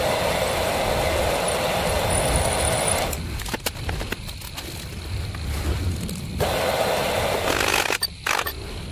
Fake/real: real